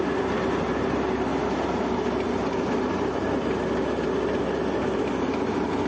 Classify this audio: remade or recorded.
recorded